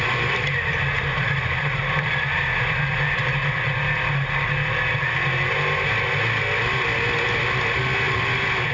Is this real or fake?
real